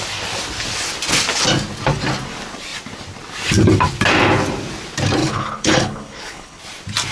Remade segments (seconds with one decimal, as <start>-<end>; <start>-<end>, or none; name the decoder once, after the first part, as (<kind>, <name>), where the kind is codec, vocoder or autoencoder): 5.2-6.6 (codec, HILCodec)